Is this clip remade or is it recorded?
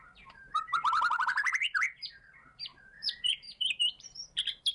remade